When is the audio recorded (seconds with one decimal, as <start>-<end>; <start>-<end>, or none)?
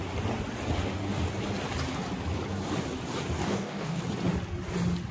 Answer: 0.0-3.4; 4.0-5.1